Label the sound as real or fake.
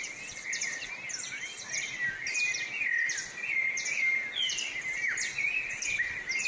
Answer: real